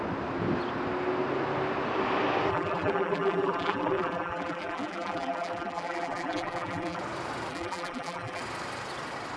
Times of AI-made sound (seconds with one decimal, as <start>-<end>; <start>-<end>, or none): 2.5-7.0; 7.5-8.4

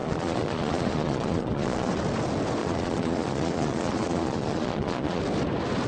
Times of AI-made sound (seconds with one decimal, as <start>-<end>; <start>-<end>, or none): 0.0-1.9; 2.6-5.2

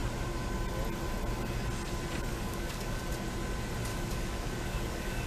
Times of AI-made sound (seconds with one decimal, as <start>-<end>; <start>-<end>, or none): 2.3-3.0; 3.9-5.3

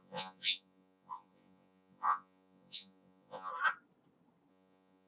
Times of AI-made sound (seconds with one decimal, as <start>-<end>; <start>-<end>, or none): 0.0-3.5; 4.5-5.1